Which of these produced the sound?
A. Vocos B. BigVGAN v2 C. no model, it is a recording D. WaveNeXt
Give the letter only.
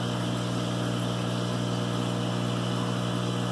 C